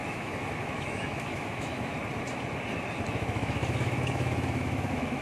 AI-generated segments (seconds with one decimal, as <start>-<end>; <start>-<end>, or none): 0.0-1.9; 3.1-5.2